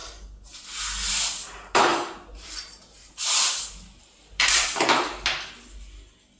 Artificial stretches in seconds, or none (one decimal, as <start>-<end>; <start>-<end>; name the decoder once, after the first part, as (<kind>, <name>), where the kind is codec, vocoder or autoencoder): 1.9-4.7 (vocoder, BigVGAN v2)